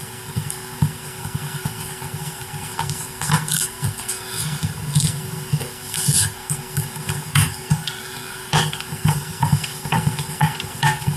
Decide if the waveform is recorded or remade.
remade